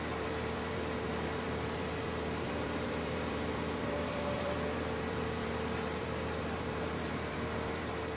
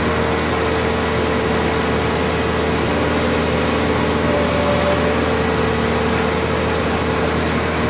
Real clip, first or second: second